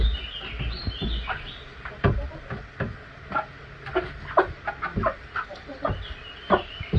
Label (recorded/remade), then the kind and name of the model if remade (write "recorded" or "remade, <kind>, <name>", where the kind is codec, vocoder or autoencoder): recorded